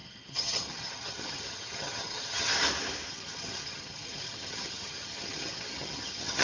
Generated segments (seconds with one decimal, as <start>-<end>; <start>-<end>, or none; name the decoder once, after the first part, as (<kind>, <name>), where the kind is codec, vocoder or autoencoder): 0.0-2.5 (vocoder, HiFi-GAN); 3.1-6.4